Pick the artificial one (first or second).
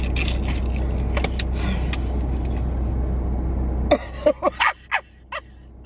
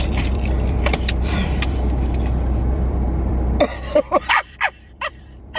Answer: second